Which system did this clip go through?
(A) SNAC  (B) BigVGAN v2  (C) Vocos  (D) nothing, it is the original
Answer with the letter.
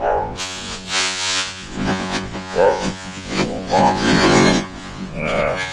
C